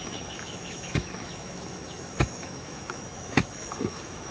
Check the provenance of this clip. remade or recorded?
remade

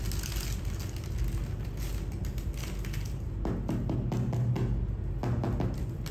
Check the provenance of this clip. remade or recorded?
recorded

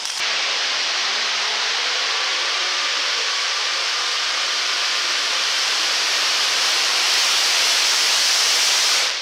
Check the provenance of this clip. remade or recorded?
remade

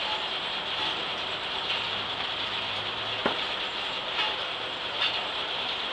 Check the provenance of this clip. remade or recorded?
remade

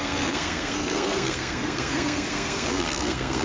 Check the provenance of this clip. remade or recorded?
remade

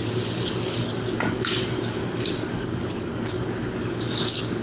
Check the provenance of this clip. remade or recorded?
remade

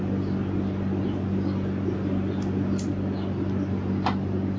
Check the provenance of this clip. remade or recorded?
recorded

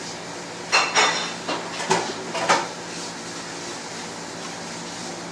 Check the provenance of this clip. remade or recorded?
recorded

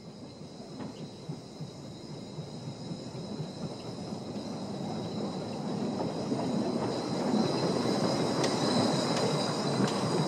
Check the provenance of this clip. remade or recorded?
recorded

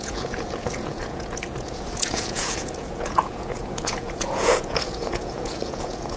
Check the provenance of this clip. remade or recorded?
remade